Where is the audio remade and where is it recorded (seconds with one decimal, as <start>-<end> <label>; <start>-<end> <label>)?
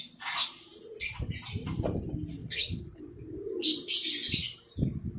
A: 0.0-2.4 recorded; 2.4-3.0 remade; 3.0-5.2 recorded